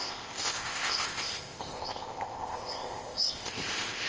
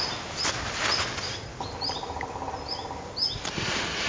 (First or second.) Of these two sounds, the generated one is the first